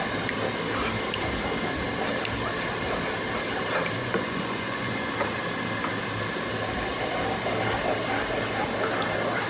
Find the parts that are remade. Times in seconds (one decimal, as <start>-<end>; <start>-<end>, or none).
4.0-5.1